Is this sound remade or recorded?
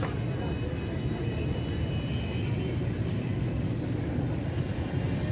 recorded